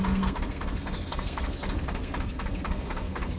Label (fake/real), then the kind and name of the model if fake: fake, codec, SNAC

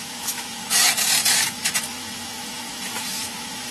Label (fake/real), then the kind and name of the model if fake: fake, autoencoder, DAC-VAE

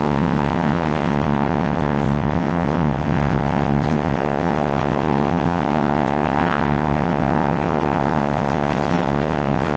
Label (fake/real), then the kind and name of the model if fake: fake, vocoder, WaveNeXt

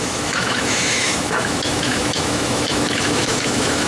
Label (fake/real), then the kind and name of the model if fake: fake, autoencoder, DAC-VAE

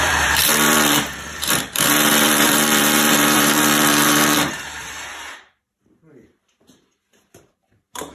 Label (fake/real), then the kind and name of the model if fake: fake, vocoder, BigVGAN v2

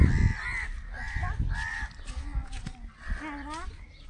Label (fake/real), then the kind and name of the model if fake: real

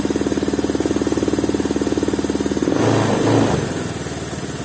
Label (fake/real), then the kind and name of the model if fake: real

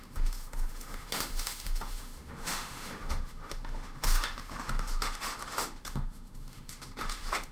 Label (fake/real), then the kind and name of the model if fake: fake, autoencoder, DAC-VAE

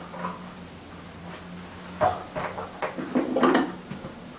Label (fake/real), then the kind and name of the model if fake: real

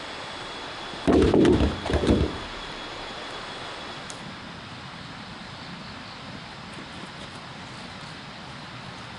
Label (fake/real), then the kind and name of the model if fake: real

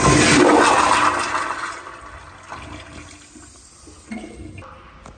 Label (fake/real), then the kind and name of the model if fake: real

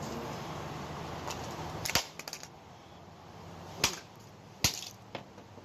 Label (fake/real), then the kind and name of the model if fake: real